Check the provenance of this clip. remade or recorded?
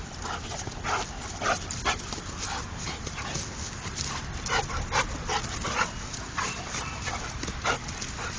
recorded